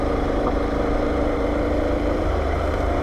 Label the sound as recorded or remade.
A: remade